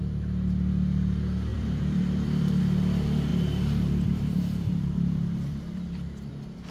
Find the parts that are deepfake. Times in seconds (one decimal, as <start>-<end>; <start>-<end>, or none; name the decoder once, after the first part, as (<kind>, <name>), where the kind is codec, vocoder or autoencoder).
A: 1.5-2.6 (vocoder, BigVGAN v2); 3.3-6.3